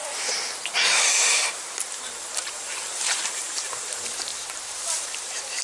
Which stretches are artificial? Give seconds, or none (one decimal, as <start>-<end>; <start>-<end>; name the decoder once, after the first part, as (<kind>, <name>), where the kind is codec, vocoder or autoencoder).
0.0-5.6 (vocoder, BigVGAN v2)